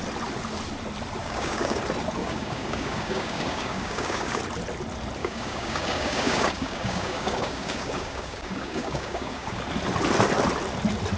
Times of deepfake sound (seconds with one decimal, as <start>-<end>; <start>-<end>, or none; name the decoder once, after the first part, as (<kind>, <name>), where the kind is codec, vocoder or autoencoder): 1.2-1.8 (codec, DAC); 2.2-4.4; 5.2-9.6